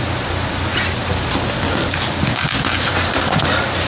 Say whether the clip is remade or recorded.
recorded